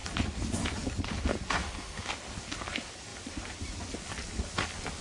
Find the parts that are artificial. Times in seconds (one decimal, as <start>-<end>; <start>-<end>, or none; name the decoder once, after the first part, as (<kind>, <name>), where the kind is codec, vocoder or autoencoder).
1.6-2.1 (autoencoder, DAC-VAE)

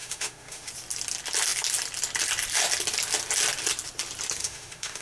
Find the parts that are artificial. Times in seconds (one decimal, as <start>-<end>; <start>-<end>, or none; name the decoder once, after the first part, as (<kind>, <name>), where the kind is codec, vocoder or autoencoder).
0.0-0.7 (autoencoder, DAC-VAE); 4.4-5.0

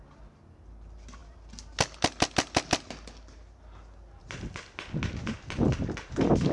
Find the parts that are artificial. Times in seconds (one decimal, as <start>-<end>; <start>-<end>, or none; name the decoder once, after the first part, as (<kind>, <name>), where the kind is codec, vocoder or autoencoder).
none

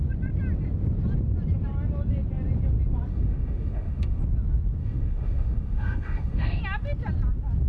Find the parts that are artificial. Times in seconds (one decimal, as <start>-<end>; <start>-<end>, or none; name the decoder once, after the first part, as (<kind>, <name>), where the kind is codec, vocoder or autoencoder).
3.1-4.2 (autoencoder, DAC-VAE); 4.8-6.6

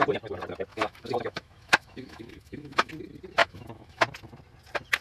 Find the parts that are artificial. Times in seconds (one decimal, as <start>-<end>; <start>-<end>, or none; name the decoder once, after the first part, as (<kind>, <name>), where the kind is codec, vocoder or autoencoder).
0.7-2.9 (autoencoder, DAC-VAE); 3.4-4.0

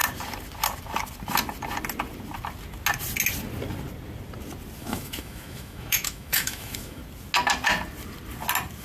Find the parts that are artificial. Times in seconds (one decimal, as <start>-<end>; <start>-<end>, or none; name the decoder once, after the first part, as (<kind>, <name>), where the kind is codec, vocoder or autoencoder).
4.8-7.0 (autoencoder, DAC-VAE)